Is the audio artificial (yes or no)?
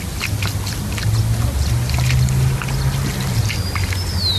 no